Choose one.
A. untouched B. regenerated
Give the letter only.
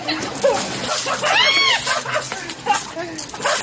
A